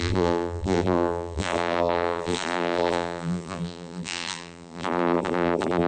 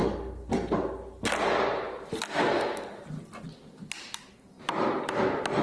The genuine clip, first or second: second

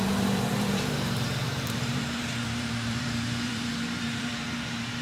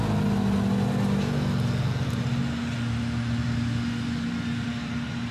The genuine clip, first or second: second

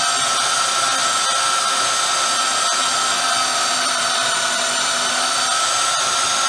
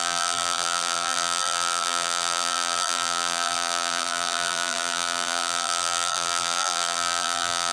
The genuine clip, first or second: first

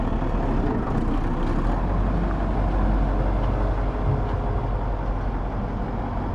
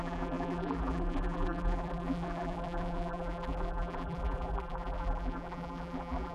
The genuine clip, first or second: first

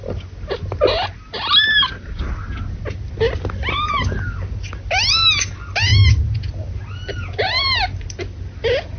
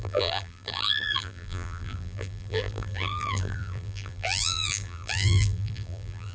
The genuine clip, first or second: first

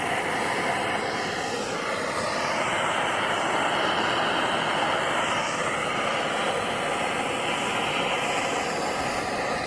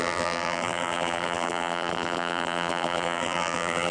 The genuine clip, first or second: first